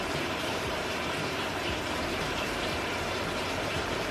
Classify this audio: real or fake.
fake